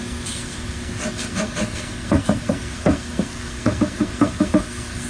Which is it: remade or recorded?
remade